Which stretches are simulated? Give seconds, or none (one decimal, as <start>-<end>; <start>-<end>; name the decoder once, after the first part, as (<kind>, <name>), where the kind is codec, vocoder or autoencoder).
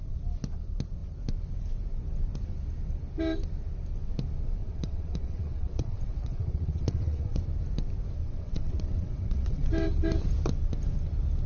4.6-7.4 (vocoder, WaveNeXt); 8.2-9.7